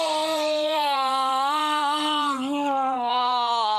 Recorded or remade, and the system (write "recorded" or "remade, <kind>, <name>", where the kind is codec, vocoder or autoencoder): remade, vocoder, BigVGAN v2